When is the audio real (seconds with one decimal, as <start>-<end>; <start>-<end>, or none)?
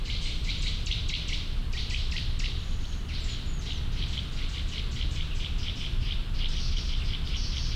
0.0-7.8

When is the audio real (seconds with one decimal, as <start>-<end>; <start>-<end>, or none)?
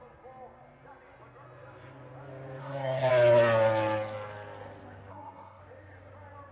0.0-2.6; 3.1-5.1; 5.6-6.5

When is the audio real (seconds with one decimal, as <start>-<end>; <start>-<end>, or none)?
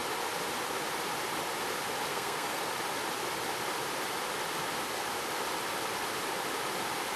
0.0-2.1; 2.6-7.2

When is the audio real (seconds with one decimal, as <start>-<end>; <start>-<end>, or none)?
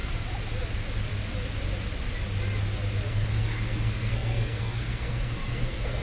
0.0-3.1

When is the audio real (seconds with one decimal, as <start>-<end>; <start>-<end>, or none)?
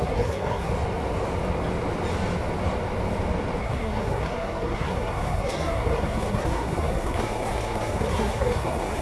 0.7-3.6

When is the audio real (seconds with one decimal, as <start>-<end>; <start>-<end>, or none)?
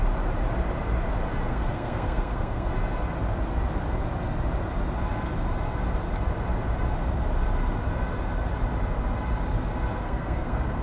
0.0-1.5; 2.7-9.9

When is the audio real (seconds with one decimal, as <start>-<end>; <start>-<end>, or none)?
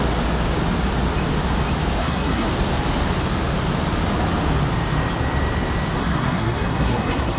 0.0-2.0; 2.5-6.0